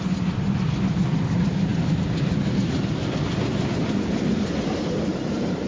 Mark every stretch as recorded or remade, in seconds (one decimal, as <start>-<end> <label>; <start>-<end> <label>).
0.0-5.7 recorded